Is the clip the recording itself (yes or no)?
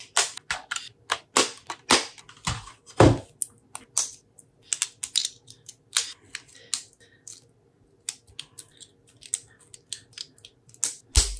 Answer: yes